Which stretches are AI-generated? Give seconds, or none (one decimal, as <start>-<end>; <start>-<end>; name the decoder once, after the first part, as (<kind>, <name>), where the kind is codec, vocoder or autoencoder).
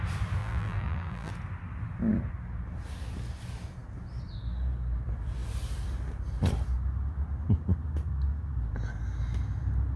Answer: 0.4-1.3 (vocoder, BigVGAN v2)